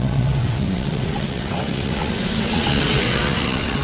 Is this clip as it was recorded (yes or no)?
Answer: no